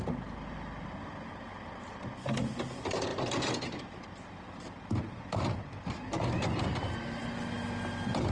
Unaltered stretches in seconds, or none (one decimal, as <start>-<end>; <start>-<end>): 0.0-8.3